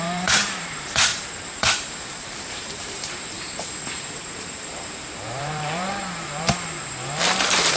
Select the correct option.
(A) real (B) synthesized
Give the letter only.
B